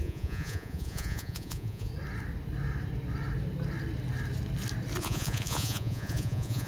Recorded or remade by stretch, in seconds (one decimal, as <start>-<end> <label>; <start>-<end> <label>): 0.0-1.9 remade; 1.9-5.0 recorded; 5.0-6.7 remade